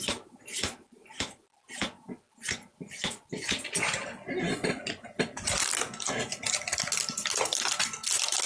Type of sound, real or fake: real